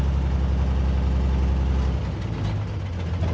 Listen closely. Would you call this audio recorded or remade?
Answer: recorded